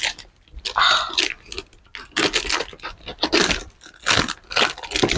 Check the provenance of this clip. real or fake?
real